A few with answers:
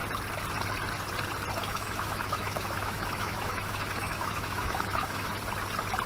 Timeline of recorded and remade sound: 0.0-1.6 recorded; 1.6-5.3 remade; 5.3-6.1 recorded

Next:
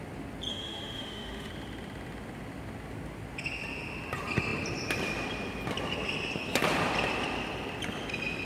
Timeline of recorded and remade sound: 0.0-0.5 recorded; 0.5-1.5 remade; 1.5-8.4 recorded

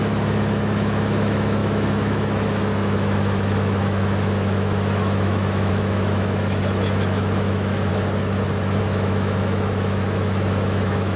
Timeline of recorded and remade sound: 0.0-7.9 remade; 7.9-8.8 recorded; 8.8-11.2 remade

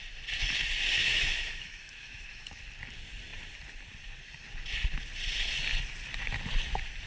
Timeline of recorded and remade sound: 0.0-1.0 recorded; 1.0-2.6 remade; 2.6-7.1 recorded

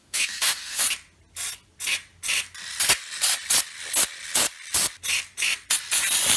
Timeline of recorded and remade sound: 0.0-0.8 remade; 0.8-6.4 recorded